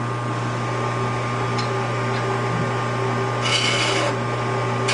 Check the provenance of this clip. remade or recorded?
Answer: recorded